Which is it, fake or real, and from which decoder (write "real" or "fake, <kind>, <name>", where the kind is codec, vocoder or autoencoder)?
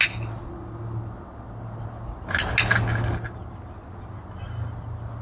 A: real